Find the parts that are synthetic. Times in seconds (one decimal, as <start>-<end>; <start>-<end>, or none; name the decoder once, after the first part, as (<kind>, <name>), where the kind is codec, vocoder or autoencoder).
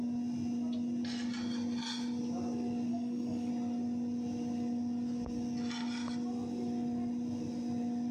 2.9-3.5 (codec, DAC)